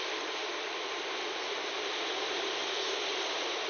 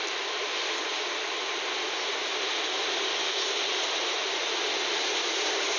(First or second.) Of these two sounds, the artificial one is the first